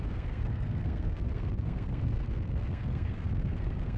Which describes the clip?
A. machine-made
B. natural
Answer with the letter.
A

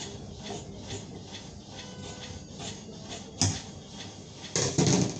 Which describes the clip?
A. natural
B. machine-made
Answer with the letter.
A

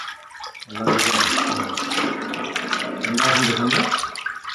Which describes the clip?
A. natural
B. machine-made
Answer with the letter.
A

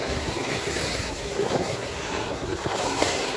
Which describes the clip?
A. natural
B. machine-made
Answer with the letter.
B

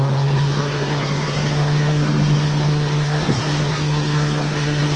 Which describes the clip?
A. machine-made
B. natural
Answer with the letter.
A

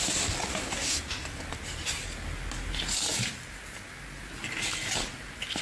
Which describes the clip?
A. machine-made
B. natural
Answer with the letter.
B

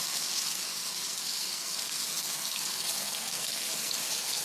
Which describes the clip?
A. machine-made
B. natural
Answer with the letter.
A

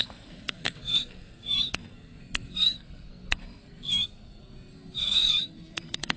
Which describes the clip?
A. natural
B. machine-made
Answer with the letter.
B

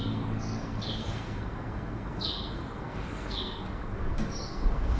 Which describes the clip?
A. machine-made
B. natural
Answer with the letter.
A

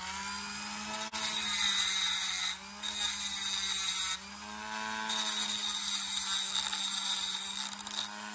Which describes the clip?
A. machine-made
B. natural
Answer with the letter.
B